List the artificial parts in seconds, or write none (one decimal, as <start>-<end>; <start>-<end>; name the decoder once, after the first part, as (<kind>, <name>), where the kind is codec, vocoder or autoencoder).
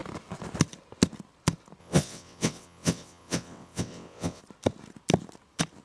1.8-4.4 (vocoder, WaveNeXt)